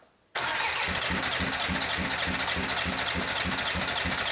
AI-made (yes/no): no